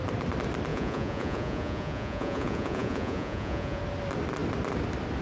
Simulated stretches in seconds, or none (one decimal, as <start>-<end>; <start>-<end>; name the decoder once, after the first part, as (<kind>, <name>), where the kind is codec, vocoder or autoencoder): 0.7-3.8 (vocoder, Vocos)